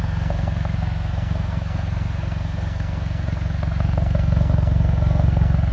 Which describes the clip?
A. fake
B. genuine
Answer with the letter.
A